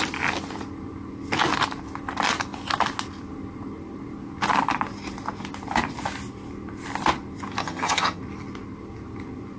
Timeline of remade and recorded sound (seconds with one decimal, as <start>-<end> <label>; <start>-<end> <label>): 0.0-7.6 recorded; 7.6-8.2 remade; 8.2-9.6 recorded